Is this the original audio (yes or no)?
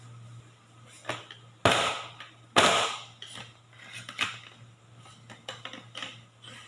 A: yes